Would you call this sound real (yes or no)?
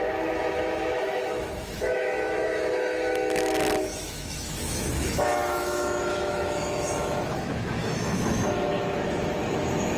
no